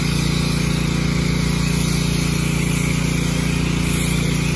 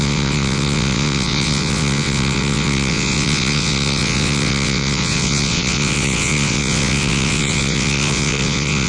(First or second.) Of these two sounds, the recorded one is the first